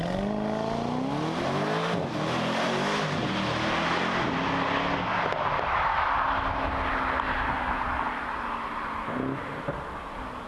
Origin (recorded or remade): recorded